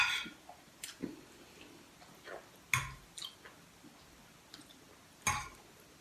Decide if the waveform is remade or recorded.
recorded